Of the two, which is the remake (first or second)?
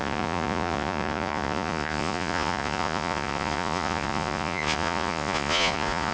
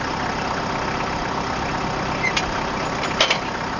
first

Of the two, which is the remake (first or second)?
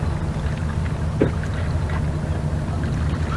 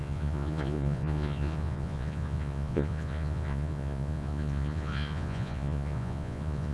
second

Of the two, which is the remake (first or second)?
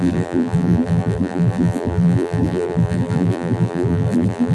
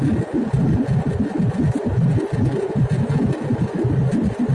first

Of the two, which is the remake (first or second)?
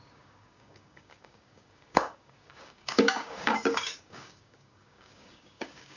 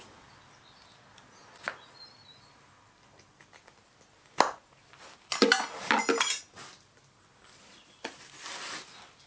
first